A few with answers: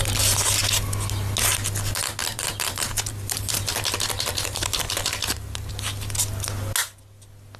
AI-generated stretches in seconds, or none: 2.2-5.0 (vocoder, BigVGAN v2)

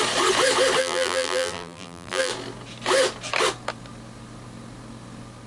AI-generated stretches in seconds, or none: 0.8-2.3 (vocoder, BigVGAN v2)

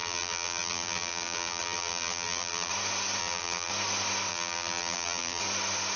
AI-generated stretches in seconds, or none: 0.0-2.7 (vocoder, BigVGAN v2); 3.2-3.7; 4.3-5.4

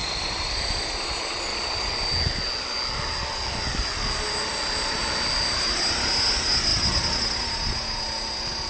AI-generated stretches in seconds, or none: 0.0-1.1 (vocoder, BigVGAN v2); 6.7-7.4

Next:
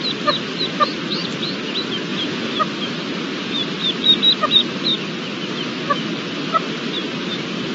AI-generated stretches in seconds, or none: 2.1-2.6 (vocoder, BigVGAN v2); 3.3-4.2

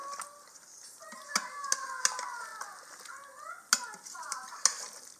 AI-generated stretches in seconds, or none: none

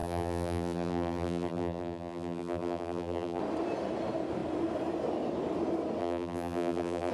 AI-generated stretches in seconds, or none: 0.0-3.4 (vocoder, BigVGAN v2); 6.0-7.1

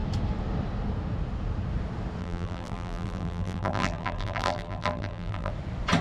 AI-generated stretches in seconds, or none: 2.2-5.5 (vocoder, BigVGAN v2)